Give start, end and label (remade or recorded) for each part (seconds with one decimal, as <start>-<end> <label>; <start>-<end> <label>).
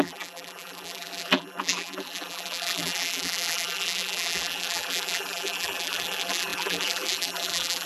0.0-7.9 remade